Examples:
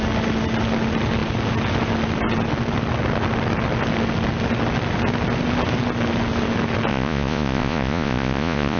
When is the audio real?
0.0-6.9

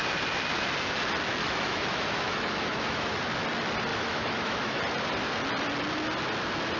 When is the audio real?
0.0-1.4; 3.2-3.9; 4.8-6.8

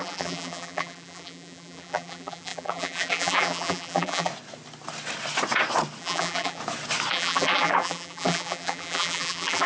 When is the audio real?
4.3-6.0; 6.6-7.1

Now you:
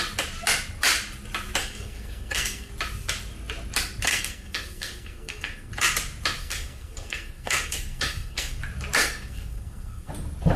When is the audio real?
0.0-1.6; 2.7-4.1; 5.7-6.4; 8.6-9.0; 10.1-10.6

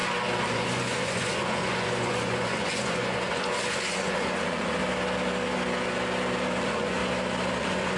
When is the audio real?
0.0-0.5; 4.8-6.6; 7.0-7.6

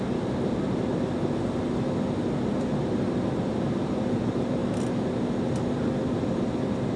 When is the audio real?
1.2-2.5; 4.6-6.1

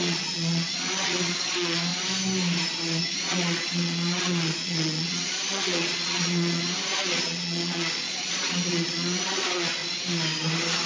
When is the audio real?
1.9-3.0; 9.8-10.9